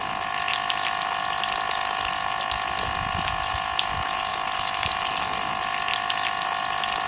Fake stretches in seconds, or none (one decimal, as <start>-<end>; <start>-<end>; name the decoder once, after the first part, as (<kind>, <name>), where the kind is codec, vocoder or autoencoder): none

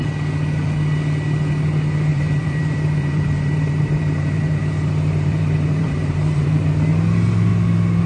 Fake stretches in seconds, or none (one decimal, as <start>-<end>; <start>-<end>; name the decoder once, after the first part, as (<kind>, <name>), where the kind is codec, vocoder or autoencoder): 2.1-6.5 (vocoder, BigVGAN v2)